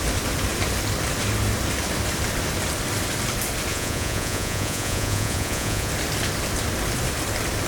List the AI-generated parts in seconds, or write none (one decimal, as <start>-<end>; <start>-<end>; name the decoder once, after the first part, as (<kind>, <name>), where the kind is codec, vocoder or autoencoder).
3.7-5.9 (vocoder, Vocos)